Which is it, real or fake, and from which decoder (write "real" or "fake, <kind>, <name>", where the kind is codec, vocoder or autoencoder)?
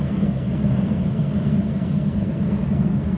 fake, codec, SNAC